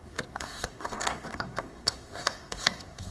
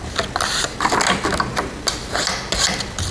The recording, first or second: second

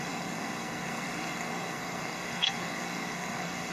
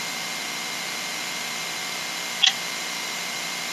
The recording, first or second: second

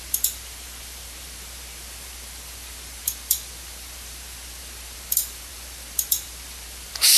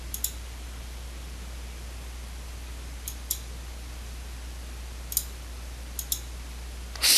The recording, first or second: second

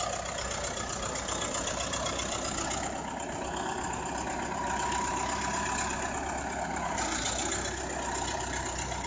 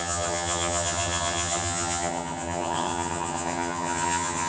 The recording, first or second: first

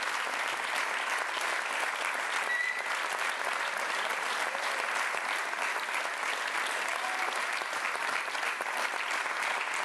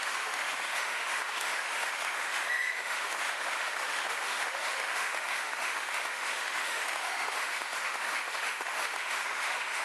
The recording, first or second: first